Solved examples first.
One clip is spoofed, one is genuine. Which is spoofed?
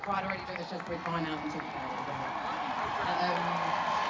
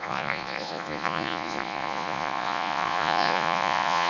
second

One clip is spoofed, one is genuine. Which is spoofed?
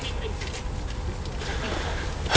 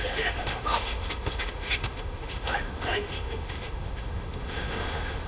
second